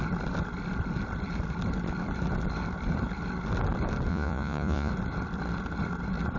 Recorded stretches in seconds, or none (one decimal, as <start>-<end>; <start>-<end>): 0.0-4.1; 4.9-6.4